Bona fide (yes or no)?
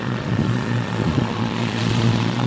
no